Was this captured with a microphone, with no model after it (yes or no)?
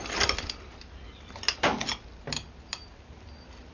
yes